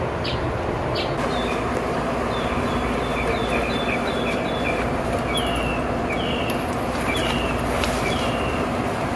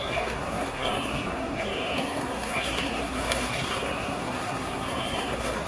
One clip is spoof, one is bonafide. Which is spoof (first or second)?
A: second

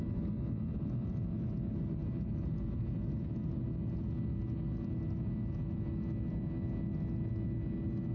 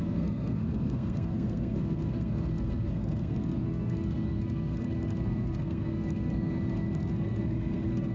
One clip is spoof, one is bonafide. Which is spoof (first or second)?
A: second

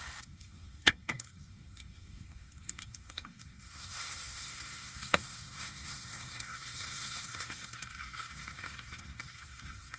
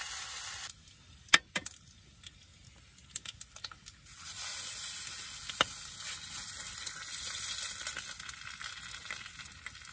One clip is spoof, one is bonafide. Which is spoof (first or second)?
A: first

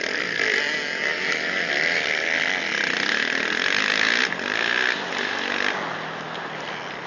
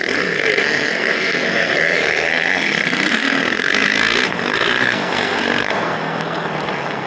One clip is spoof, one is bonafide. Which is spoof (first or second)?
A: second